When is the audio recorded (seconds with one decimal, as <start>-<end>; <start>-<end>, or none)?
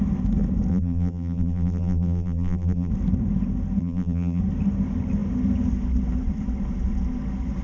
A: 0.0-0.7; 2.9-3.8; 4.4-7.6